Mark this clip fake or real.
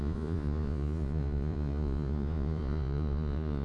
fake